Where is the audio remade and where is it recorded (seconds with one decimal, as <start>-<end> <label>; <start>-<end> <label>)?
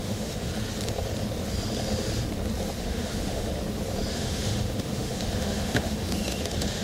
0.0-0.5 remade; 0.5-2.8 recorded; 2.8-3.5 remade; 3.5-4.1 recorded; 4.1-6.8 remade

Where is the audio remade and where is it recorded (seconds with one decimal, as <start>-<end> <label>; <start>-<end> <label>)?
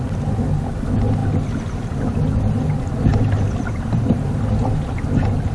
0.0-5.5 recorded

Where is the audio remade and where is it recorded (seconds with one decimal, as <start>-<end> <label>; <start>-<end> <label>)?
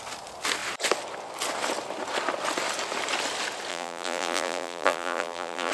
0.0-3.7 recorded; 3.7-5.7 remade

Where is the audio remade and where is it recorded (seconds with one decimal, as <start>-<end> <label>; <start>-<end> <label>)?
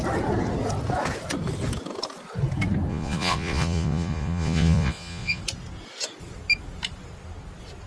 0.0-2.9 recorded; 2.9-5.4 remade; 5.4-7.9 recorded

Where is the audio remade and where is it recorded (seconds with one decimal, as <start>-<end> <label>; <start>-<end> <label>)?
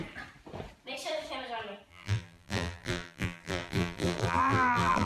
0.0-1.9 recorded; 1.9-5.1 remade